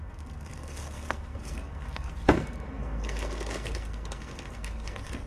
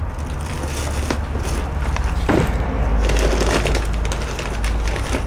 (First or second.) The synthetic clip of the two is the first